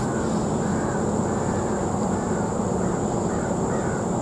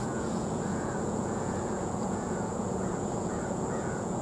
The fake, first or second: second